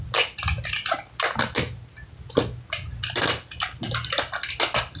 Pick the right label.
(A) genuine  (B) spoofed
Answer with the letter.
A